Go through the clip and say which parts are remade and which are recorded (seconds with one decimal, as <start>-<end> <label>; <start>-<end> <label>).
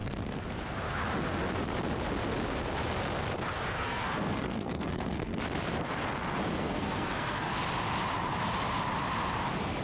0.0-3.7 recorded; 3.7-5.3 remade; 5.3-6.6 recorded; 6.6-7.5 remade; 7.5-9.8 recorded